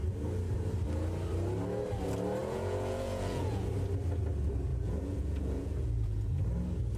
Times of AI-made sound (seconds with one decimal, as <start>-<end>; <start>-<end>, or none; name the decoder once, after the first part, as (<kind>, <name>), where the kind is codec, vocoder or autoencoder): 2.4-3.7 (vocoder, Vocos); 4.7-6.3